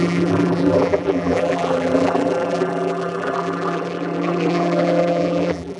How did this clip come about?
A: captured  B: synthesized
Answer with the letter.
B